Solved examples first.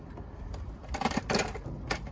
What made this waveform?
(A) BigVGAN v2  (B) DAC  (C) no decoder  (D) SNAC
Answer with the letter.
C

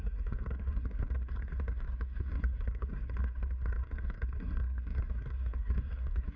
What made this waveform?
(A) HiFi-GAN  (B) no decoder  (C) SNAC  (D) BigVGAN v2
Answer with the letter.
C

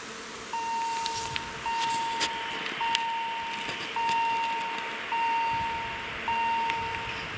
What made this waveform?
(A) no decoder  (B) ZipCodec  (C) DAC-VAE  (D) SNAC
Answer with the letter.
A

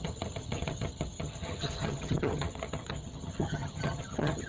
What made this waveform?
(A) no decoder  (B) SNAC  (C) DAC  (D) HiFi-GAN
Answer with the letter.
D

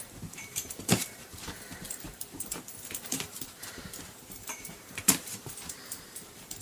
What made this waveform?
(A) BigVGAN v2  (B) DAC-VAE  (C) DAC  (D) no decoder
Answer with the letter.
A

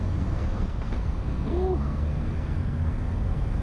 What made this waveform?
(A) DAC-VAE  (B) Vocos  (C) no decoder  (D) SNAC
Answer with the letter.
D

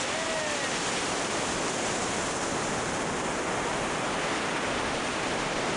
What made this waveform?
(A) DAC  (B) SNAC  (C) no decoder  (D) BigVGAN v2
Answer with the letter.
C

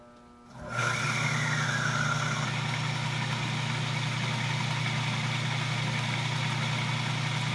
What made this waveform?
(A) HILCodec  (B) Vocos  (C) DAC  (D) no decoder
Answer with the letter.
D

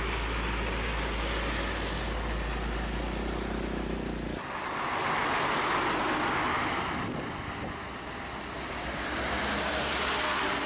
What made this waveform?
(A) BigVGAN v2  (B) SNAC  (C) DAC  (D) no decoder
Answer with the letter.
D